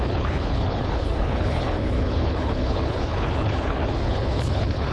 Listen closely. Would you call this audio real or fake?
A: fake